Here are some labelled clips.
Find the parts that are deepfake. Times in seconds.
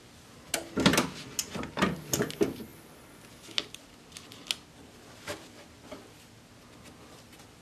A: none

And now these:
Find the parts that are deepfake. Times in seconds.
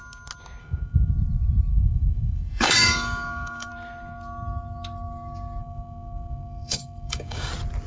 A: 0.6-1.1 (codec, DAC); 1.7-3.7; 5.6-7.5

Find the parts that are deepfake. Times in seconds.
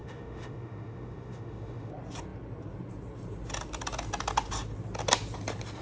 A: 0.0-1.9 (autoencoder, DAC-VAE)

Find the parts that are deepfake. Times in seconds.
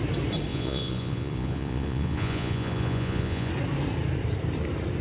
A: 0.5-3.5 (vocoder, Vocos)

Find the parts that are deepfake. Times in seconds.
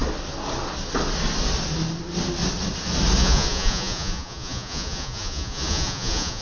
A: 3.2-6.4 (vocoder, Vocos)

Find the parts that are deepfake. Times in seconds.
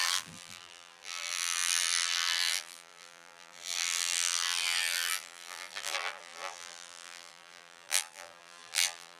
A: 0.0-9.2 (vocoder, BigVGAN v2)